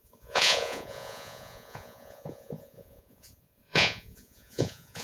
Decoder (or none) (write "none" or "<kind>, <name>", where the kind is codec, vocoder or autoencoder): vocoder, Vocos